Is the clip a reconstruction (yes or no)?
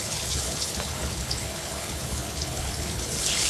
yes